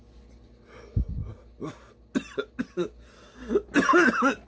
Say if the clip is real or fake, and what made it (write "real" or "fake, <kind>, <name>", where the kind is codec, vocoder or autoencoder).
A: real